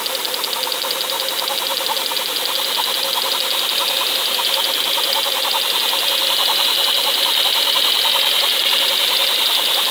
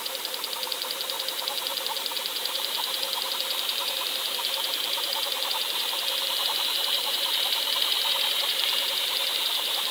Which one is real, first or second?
first